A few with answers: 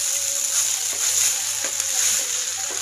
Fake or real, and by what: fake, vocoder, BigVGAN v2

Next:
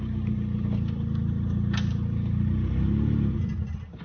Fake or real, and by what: real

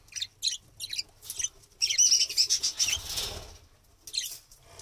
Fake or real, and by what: real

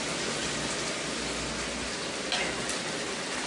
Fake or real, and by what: real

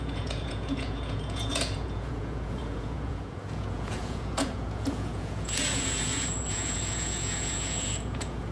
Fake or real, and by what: fake, vocoder, Vocos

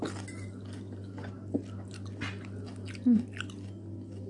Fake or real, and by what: real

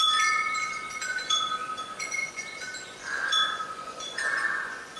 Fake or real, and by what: fake, vocoder, Vocos